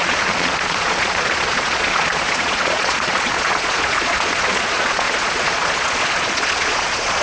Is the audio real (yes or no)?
no